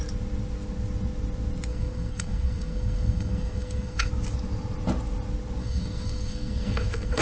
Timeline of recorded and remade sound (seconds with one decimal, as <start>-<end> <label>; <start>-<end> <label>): 0.0-1.7 recorded; 1.7-4.1 remade; 4.1-5.6 recorded; 5.6-7.2 remade